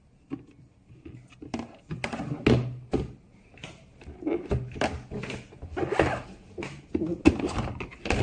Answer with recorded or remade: recorded